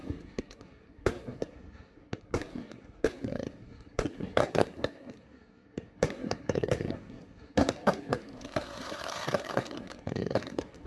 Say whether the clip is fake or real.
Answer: fake